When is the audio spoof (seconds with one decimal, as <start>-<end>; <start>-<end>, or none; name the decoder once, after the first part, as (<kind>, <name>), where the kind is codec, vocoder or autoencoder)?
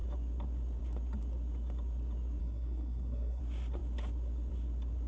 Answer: 2.4-3.4 (codec, SNAC)